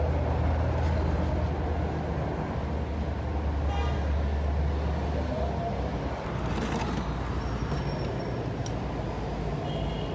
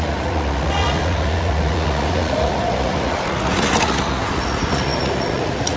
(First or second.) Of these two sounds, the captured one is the first